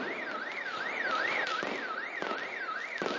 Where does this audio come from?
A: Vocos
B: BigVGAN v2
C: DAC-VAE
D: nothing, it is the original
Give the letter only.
D